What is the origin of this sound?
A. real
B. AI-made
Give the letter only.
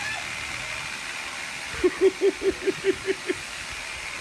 A